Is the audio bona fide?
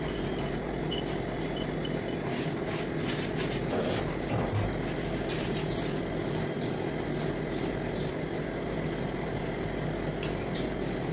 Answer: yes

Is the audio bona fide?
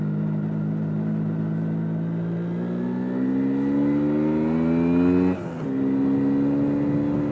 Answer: yes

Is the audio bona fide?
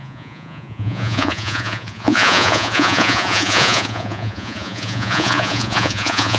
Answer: no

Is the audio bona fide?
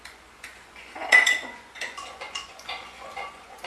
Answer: no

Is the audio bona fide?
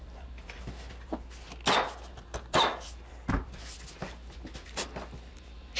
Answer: yes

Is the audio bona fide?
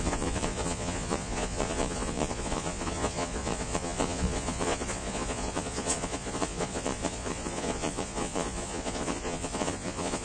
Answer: no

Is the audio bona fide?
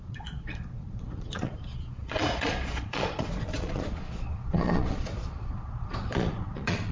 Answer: no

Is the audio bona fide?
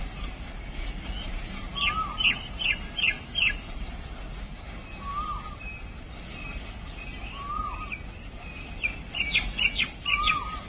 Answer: yes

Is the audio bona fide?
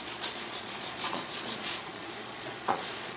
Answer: no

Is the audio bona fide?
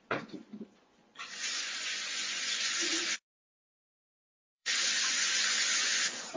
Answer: no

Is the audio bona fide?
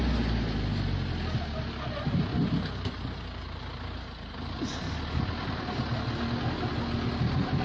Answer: yes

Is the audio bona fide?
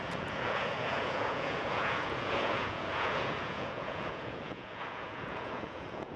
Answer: no